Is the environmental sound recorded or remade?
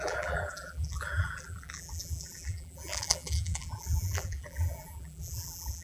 remade